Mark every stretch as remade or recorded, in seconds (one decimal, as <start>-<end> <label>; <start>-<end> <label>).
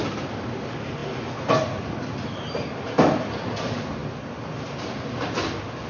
0.0-5.9 recorded